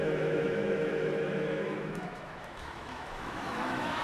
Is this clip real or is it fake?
fake